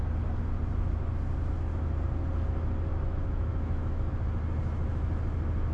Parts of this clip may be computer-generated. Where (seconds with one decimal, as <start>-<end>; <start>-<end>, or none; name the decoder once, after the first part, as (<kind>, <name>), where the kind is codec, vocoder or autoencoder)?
2.9-4.1 (autoencoder, DAC-VAE)